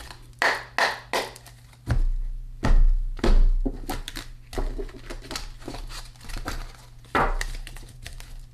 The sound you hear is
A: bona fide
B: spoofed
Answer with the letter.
A